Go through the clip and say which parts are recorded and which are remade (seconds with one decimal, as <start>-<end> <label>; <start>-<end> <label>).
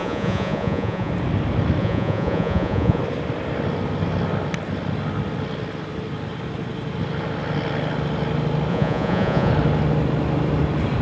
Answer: 0.0-1.1 remade; 1.1-1.8 recorded; 1.8-3.0 remade; 3.0-8.7 recorded; 8.7-9.5 remade; 9.5-11.0 recorded